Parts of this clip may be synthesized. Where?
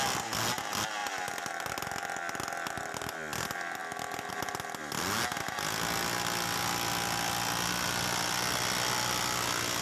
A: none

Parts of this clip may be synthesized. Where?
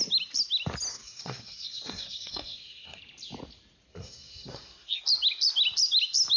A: 0.9-3.0 (codec, SNAC); 3.9-5.0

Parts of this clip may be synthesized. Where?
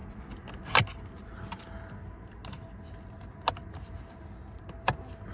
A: 3.6-4.6 (vocoder, BigVGAN v2)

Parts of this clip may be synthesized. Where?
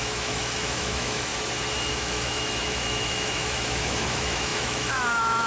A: 0.0-1.3 (autoencoder, DAC-VAE); 1.9-5.5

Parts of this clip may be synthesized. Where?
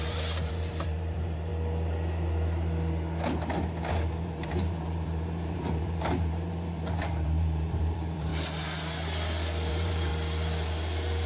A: 0.0-1.5 (vocoder, BigVGAN v2); 3.9-8.3; 9.7-10.1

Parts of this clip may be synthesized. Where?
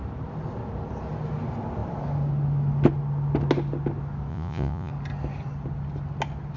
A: 4.3-4.9 (vocoder, Vocos)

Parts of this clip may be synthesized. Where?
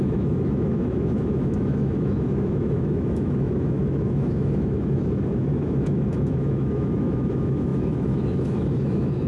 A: 0.0-9.3 (autoencoder, DAC-VAE)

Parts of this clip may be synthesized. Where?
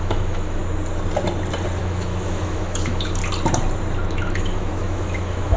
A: 0.0-0.6 (autoencoder, DAC-VAE); 1.8-3.2; 4.1-5.6